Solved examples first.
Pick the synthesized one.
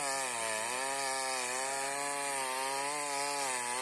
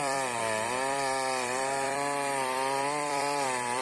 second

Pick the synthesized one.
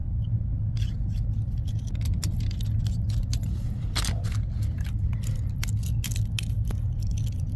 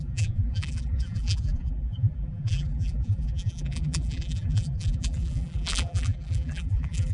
second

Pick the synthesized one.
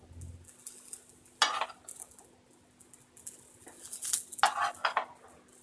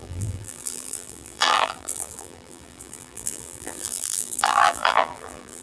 second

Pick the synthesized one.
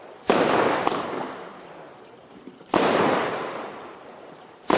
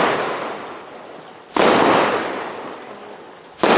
first